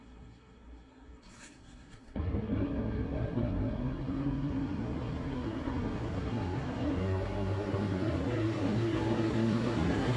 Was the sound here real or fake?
fake